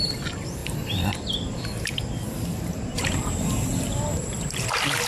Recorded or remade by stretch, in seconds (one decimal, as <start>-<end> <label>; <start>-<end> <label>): 0.0-5.1 recorded